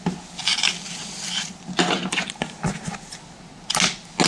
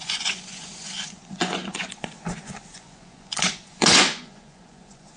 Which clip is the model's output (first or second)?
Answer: second